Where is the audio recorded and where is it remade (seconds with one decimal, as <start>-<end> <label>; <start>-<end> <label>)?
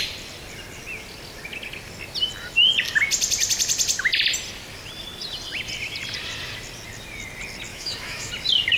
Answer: 0.0-7.7 recorded; 7.7-8.3 remade; 8.3-8.8 recorded